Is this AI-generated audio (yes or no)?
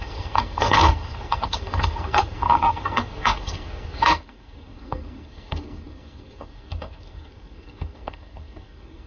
yes